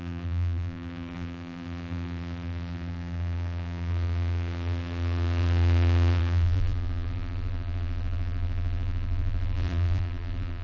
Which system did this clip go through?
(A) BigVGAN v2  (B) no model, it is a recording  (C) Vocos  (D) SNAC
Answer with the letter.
A